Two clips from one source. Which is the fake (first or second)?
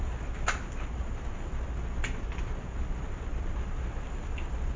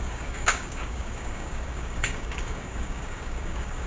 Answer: second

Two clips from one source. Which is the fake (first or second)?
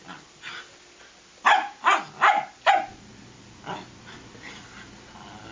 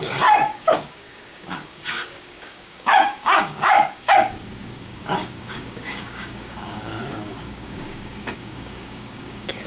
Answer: second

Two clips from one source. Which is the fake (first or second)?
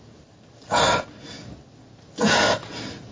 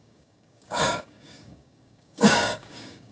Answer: second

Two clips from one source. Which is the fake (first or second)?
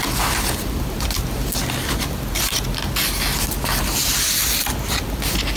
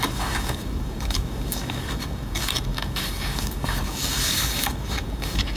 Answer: second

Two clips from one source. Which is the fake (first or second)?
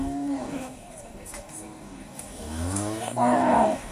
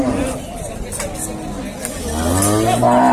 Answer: first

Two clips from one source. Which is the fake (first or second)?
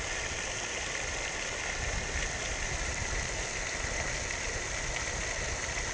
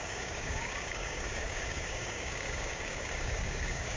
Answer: second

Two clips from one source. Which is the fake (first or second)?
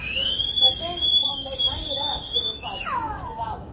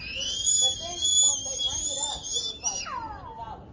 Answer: first